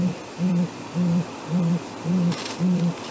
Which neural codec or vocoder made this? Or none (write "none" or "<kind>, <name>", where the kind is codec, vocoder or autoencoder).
vocoder, BigVGAN v2